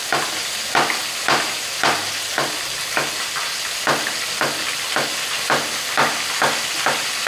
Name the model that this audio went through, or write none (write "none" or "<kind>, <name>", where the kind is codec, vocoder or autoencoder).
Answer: none